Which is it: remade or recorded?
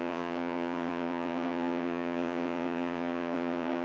remade